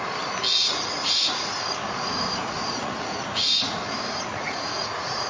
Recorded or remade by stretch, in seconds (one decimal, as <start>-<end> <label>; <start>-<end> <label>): 0.0-0.6 recorded; 0.6-3.8 remade; 3.8-4.3 recorded; 4.3-5.3 remade